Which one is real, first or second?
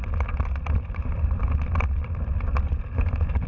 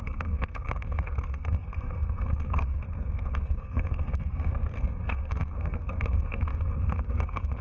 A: first